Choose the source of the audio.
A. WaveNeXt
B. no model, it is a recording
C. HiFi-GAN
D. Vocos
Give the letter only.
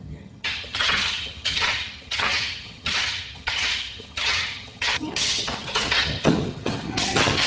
C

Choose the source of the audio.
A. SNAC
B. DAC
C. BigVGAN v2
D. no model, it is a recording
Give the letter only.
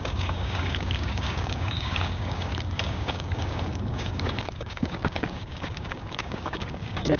B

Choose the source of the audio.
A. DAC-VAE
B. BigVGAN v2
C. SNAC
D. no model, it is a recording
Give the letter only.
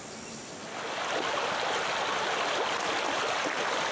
D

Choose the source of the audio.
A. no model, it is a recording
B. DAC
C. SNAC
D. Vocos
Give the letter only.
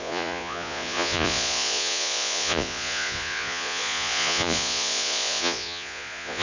D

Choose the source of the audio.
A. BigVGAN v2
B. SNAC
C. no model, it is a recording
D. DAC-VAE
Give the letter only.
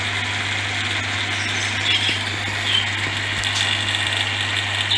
C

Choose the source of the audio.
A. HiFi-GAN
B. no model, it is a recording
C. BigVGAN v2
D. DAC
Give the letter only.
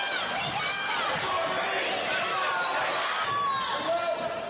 B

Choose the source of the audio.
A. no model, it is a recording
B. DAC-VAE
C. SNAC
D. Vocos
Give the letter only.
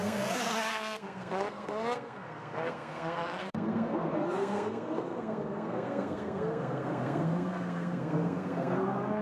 C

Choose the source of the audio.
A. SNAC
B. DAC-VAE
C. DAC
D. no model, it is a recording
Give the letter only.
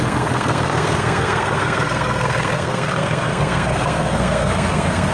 A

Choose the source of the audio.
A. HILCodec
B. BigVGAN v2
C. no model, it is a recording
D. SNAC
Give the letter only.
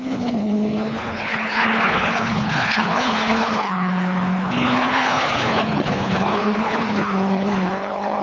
A